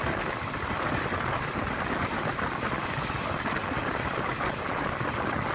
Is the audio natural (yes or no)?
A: yes